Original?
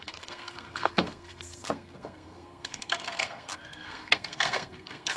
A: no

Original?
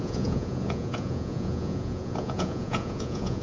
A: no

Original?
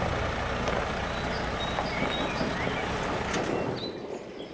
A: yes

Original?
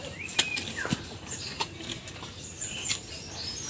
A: yes